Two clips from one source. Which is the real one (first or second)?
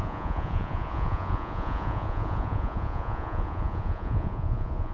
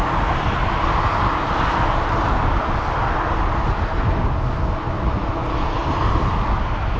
second